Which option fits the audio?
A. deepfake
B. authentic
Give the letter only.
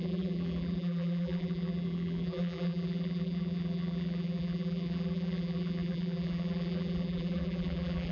A